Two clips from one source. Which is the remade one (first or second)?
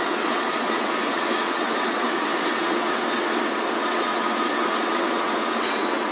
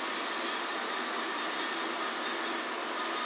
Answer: first